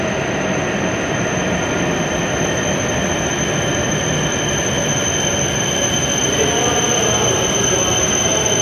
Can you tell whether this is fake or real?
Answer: real